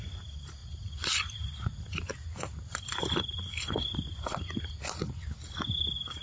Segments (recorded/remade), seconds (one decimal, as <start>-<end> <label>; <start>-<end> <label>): 0.0-6.2 recorded